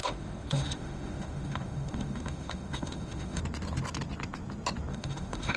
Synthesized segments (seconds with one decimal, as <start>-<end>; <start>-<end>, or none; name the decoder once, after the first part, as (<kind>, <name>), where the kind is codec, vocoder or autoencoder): 0.0-3.4 (autoencoder, DAC-VAE); 4.9-5.6